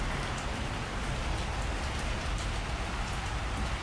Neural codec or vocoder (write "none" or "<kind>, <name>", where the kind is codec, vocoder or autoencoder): none